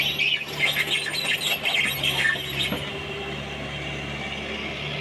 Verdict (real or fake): real